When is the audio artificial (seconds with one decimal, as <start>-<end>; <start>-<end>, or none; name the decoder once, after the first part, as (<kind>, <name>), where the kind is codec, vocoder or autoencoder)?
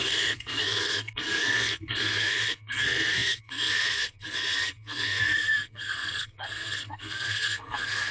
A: 0.0-8.1 (codec, SNAC)